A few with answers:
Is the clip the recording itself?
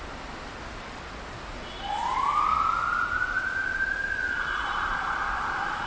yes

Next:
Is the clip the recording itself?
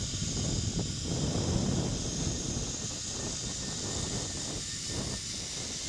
yes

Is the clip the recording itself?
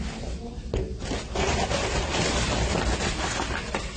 yes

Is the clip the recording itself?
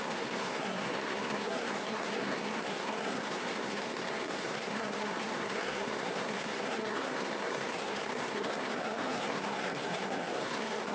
no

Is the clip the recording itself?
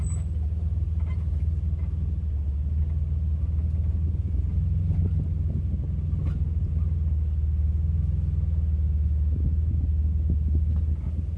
yes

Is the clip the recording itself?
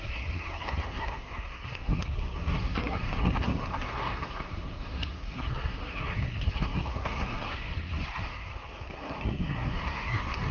no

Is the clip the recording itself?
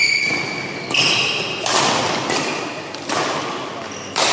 yes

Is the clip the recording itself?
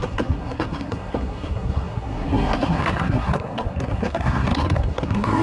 no